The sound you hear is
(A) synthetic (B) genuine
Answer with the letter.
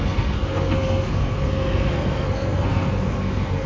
A